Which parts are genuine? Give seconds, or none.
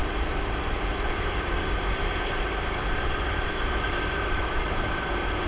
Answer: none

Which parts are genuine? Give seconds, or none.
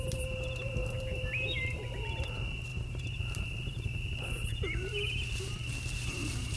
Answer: none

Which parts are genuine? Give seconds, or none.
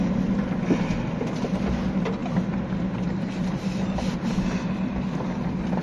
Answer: 0.0-2.2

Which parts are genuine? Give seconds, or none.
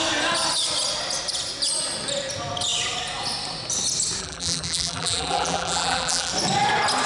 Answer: 0.0-4.2; 6.3-7.1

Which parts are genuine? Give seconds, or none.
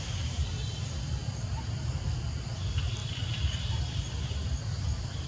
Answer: none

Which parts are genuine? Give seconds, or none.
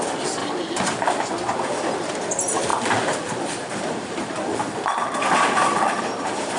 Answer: 0.0-0.4; 1.3-2.7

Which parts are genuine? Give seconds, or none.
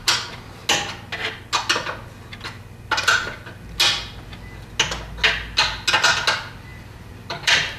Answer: 0.0-6.7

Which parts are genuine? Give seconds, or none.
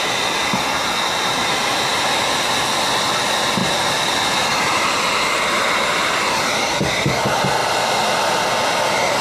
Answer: 0.0-3.6; 5.2-6.0; 7.1-9.2